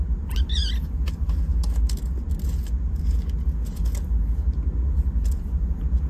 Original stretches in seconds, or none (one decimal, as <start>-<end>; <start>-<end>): 0.0-6.1

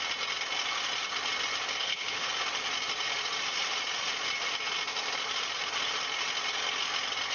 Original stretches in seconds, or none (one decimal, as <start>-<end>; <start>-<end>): 0.0-1.8; 2.3-7.3

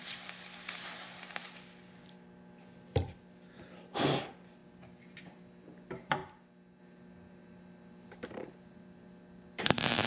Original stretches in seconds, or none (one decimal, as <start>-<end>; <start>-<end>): 4.6-5.2; 6.2-6.8

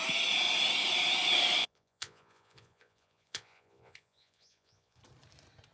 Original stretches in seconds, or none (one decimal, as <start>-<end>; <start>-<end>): 0.0-1.6; 5.0-5.7

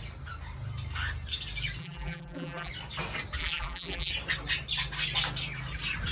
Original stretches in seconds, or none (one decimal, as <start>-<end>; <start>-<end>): 0.0-1.8; 2.7-3.4; 4.1-6.1

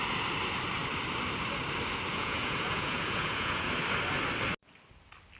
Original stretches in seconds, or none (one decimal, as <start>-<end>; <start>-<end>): 0.0-2.1; 3.7-5.4